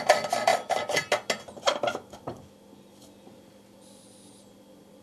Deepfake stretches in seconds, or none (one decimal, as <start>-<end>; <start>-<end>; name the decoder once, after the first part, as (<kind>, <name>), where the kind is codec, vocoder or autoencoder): none